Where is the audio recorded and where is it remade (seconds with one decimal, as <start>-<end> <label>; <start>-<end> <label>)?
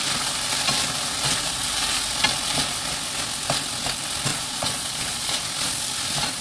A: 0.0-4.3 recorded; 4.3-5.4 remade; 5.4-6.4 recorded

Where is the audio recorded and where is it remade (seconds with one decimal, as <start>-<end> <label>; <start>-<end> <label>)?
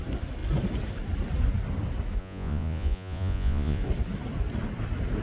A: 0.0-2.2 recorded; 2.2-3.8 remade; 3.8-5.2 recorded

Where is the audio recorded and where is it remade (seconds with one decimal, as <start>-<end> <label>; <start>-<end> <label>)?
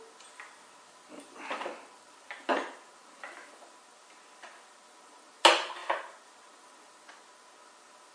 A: 0.0-8.1 recorded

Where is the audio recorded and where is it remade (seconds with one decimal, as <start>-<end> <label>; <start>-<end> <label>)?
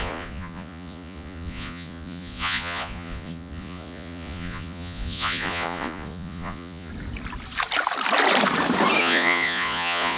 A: 0.0-6.9 remade; 6.9-9.0 recorded; 9.0-10.2 remade